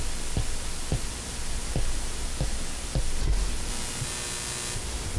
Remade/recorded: recorded